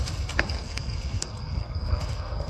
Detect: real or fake fake